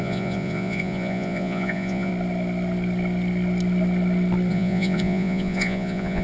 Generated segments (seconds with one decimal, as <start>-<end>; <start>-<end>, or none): 0.0-2.1; 4.5-6.2